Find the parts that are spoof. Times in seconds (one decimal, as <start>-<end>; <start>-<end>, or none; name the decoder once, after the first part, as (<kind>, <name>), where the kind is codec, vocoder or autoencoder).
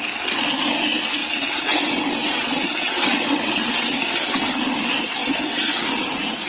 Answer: 1.2-4.0 (vocoder, WaveNeXt); 5.2-5.8